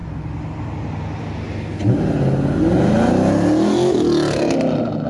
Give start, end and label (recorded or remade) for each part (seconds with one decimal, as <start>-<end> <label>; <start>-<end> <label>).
0.0-5.1 recorded